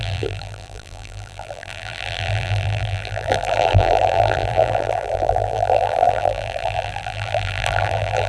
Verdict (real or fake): fake